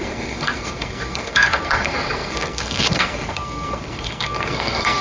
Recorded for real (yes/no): no